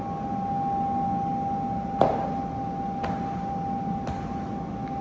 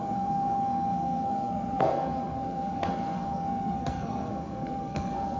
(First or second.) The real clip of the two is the first